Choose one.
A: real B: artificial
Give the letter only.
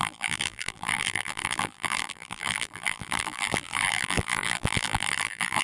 B